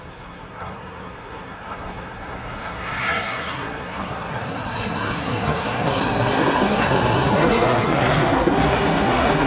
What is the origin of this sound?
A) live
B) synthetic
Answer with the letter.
B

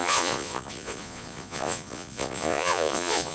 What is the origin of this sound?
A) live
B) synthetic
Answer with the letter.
B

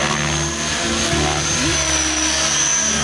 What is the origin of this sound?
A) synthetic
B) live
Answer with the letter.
B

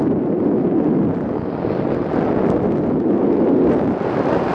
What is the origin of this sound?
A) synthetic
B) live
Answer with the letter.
B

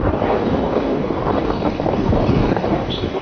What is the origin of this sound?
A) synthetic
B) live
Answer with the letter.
A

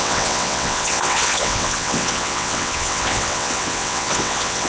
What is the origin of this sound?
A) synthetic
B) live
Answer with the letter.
A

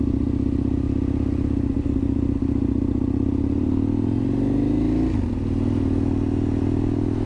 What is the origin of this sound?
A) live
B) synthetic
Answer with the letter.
A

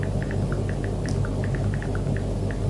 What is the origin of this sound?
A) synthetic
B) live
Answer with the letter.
B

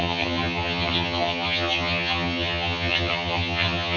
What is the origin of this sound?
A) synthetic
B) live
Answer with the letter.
A